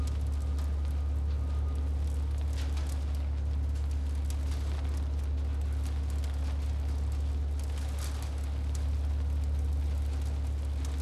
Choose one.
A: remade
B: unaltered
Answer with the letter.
B